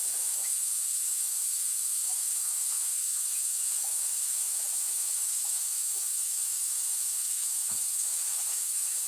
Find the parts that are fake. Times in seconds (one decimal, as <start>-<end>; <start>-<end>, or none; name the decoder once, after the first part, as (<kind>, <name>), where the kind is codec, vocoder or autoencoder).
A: 0.0-9.1 (autoencoder, DAC-VAE)

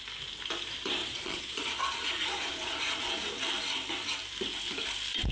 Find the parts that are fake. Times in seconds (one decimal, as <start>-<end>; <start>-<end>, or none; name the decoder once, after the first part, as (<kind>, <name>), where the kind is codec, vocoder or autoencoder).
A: 1.0-3.3 (vocoder, Vocos)

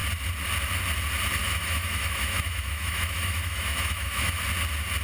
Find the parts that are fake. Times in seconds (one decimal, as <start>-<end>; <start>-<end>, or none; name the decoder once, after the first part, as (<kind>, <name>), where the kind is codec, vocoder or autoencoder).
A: 1.4-4.4 (autoencoder, DAC-VAE)

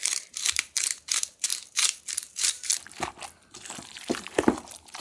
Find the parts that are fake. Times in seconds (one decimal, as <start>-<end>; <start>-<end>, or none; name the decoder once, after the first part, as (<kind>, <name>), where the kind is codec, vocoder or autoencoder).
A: 0.0-2.7 (vocoder, BigVGAN v2); 3.8-5.0

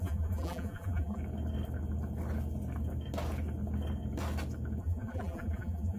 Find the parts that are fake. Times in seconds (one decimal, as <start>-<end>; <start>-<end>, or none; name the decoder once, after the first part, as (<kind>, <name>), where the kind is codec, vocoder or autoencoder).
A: 0.0-1.2 (vocoder, BigVGAN v2); 4.8-6.0

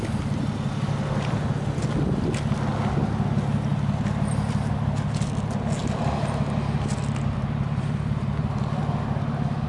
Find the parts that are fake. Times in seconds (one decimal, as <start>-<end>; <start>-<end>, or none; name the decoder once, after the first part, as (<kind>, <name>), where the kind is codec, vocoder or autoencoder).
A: 5.8-8.9 (vocoder, BigVGAN v2)

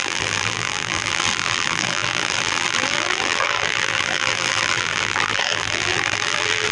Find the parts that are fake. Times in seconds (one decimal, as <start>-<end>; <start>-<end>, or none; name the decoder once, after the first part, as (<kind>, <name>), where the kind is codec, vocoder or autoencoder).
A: 0.0-6.7 (vocoder, BigVGAN v2)